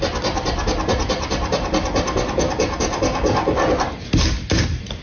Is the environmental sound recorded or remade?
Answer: recorded